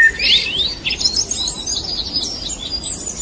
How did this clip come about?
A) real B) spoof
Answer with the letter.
A